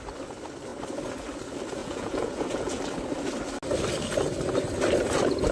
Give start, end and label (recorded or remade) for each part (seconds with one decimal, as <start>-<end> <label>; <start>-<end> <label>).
0.0-1.8 recorded; 1.8-2.8 remade; 2.8-5.5 recorded